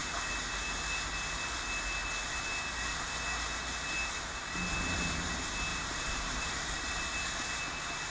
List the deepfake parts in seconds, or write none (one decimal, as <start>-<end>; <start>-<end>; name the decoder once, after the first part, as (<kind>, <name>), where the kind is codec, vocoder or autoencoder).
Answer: 5.7-6.9 (vocoder, BigVGAN v2)